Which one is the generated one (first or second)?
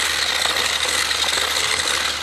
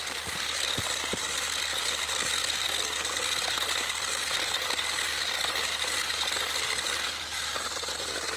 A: second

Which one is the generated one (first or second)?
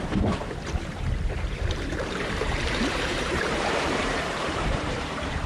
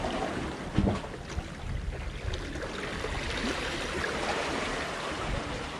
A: first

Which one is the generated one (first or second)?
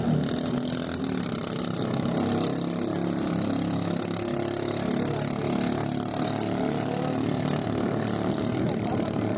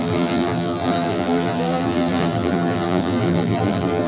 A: second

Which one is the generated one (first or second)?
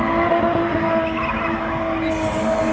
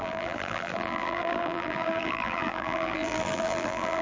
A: second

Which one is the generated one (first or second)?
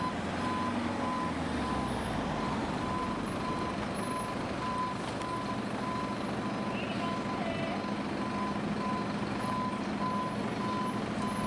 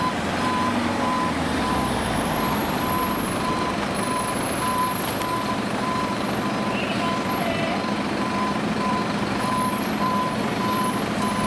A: second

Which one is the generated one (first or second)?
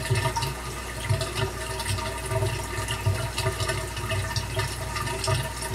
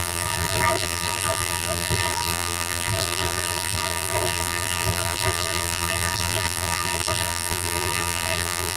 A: second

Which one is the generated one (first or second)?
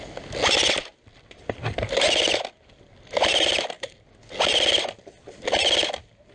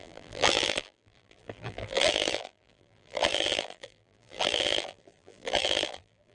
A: second